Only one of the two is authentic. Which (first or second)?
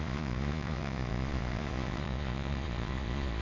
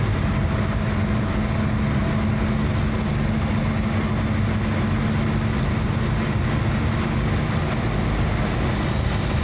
second